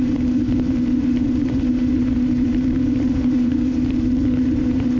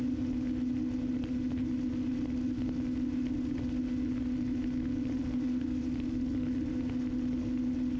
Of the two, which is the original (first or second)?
second